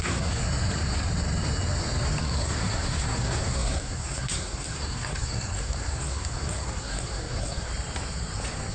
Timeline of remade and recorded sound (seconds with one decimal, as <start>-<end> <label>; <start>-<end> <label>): 0.0-0.4 remade; 0.4-2.2 recorded; 2.2-7.7 remade; 7.7-8.7 recorded